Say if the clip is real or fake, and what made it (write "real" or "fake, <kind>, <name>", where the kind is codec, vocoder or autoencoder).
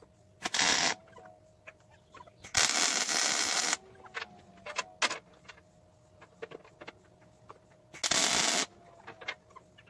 real